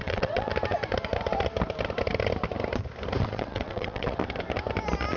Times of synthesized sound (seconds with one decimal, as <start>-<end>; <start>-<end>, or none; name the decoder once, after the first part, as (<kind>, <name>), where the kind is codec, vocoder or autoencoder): 0.0-0.5 (vocoder, WaveNeXt); 3.2-4.2